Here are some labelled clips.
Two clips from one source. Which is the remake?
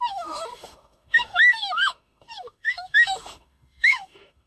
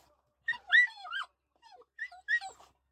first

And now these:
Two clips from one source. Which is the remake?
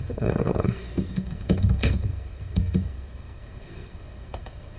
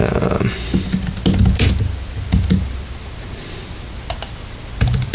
first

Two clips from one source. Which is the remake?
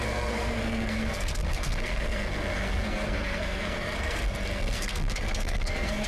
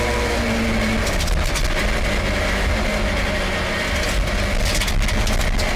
first